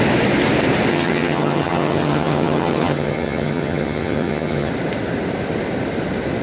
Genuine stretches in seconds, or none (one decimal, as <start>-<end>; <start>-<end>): 0.0-0.9; 4.7-6.4